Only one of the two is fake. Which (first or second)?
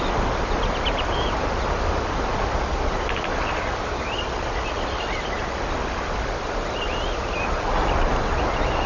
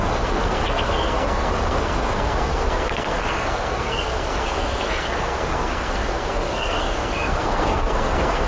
second